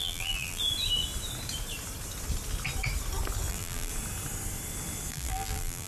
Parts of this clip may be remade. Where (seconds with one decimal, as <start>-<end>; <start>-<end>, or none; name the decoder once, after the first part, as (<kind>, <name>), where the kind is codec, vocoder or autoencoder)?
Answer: 0.0-0.6 (vocoder, BigVGAN v2); 3.5-3.9; 5.1-5.9